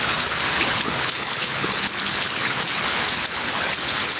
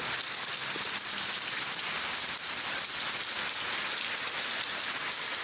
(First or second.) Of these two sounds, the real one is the second